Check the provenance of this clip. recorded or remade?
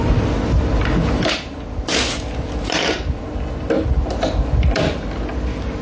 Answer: recorded